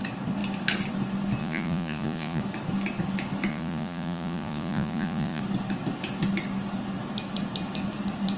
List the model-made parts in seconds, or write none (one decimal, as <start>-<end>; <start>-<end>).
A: 1.4-2.4; 3.5-5.4